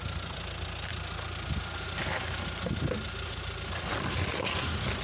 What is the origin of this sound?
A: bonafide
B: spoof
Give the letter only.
A